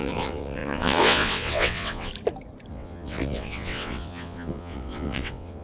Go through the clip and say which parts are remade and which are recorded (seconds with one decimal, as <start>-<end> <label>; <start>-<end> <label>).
0.0-2.1 remade; 2.1-2.7 recorded; 2.7-5.6 remade

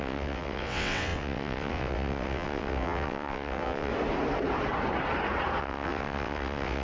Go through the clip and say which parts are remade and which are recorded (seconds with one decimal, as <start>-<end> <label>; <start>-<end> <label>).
0.0-3.9 remade; 3.9-5.6 recorded; 5.6-6.8 remade

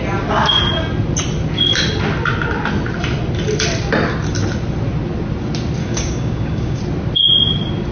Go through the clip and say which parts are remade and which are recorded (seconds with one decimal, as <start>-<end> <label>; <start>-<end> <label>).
0.0-5.8 recorded; 5.8-6.8 remade; 6.8-7.9 recorded

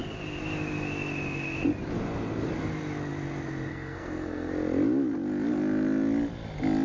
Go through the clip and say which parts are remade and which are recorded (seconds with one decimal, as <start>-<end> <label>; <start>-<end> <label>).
0.0-3.7 recorded; 3.7-4.5 remade; 4.5-6.8 recorded